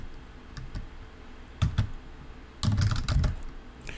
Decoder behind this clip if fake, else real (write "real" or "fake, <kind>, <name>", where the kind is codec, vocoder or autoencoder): real